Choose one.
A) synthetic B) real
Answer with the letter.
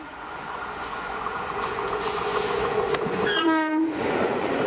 A